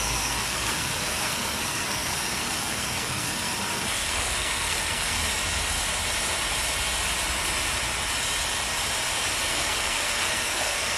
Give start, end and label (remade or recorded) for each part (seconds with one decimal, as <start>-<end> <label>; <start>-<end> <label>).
0.0-5.3 remade; 5.3-9.5 recorded; 9.5-11.0 remade